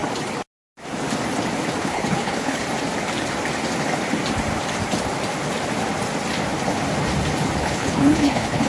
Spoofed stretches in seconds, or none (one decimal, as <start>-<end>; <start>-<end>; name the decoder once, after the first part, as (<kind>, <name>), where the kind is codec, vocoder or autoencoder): 1.8-2.6 (codec, HILCodec); 7.6-8.7

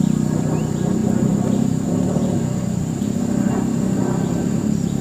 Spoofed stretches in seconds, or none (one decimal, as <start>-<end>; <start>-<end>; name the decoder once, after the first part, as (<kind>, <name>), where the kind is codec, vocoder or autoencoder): none

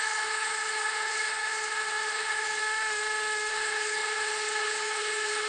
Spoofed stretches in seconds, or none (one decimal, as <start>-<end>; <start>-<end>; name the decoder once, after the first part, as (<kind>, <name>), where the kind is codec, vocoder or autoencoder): 0.0-2.6 (codec, HILCodec); 3.5-5.5